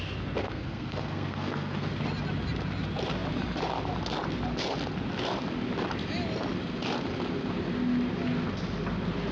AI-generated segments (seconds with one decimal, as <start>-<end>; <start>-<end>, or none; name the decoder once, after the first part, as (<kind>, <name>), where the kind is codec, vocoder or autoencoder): 0.4-1.9 (codec, SNAC)